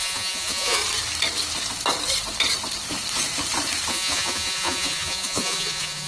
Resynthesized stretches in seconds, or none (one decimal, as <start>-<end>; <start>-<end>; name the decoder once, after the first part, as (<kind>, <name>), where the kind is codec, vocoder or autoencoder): 0.0-0.8 (vocoder, Vocos); 3.9-6.1